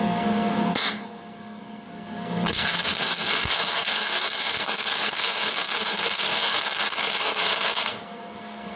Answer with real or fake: fake